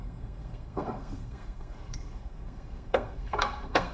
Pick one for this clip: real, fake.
fake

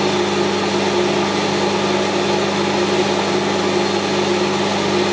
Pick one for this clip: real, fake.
real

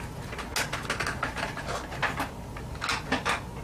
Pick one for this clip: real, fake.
real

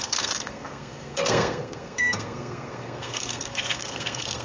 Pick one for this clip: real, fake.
fake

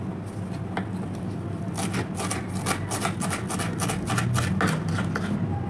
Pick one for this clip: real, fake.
real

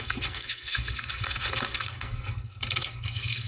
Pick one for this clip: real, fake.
fake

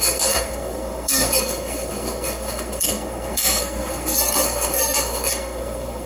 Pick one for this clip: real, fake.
fake